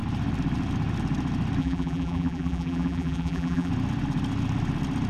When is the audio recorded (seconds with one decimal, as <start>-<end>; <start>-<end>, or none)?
0.0-1.6; 3.7-5.1